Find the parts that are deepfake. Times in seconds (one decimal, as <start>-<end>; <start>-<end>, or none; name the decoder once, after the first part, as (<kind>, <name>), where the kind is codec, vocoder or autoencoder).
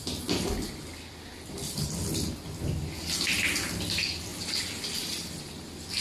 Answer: none